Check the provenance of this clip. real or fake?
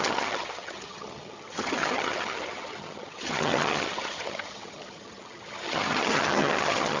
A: fake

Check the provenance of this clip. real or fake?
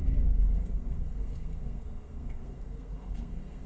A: fake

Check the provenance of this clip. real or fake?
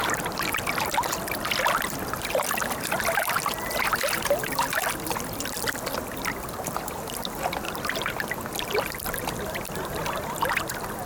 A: real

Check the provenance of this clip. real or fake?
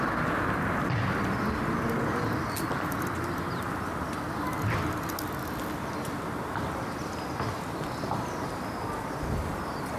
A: real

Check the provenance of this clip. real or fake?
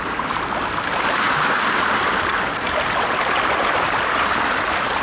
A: real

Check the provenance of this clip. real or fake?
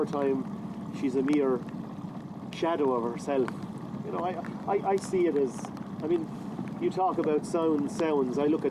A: real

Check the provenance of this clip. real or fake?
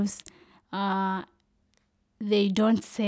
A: real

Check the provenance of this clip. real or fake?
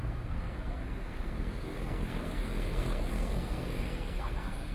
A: fake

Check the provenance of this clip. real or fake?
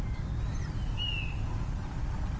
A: real